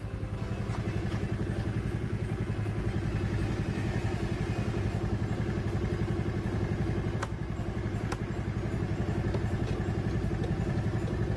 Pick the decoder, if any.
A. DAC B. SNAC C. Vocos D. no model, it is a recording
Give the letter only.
D